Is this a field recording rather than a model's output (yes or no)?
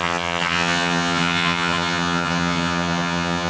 no